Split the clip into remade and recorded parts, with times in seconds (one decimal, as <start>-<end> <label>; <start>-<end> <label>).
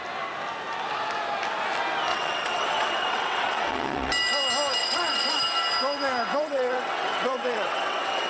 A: 0.0-2.1 recorded; 2.1-4.1 remade; 4.1-4.8 recorded; 4.8-5.4 remade; 5.4-6.3 recorded; 6.3-8.3 remade